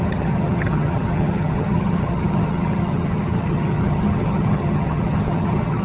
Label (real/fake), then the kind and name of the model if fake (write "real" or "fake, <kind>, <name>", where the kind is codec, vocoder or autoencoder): fake, vocoder, HiFi-GAN